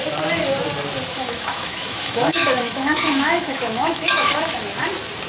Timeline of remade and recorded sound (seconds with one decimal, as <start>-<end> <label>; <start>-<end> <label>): 0.0-1.1 recorded; 1.1-4.3 remade; 4.3-5.3 recorded